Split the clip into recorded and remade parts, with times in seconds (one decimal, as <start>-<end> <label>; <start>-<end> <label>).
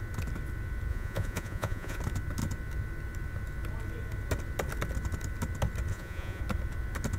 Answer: 0.0-0.9 recorded; 0.9-2.0 remade; 2.0-5.9 recorded; 5.9-6.4 remade; 6.4-7.2 recorded